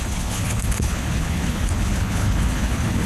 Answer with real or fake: fake